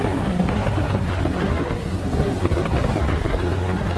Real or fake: fake